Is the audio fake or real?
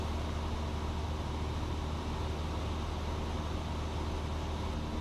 real